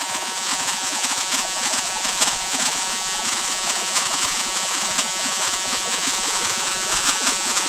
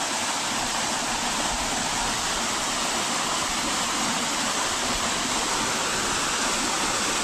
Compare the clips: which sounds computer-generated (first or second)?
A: first